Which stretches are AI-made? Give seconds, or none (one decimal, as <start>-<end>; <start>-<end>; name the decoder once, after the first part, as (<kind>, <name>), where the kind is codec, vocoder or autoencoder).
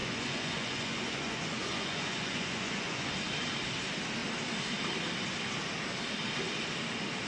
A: 0.0-3.1 (vocoder, Vocos)